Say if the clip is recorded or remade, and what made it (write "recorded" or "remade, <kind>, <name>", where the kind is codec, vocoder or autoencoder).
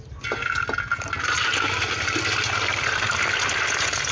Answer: recorded